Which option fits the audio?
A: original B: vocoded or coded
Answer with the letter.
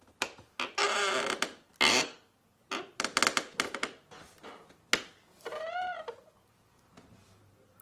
A